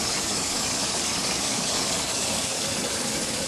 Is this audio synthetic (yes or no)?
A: yes